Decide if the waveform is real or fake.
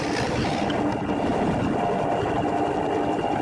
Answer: real